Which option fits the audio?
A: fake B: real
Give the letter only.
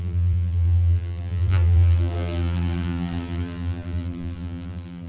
A